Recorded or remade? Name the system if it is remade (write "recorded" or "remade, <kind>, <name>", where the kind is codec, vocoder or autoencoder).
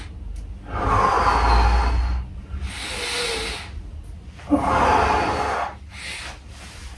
recorded